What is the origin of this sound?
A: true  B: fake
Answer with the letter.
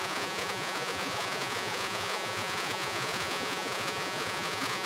B